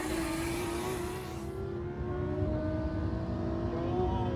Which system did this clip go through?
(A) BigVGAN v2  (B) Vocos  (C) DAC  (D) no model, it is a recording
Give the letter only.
D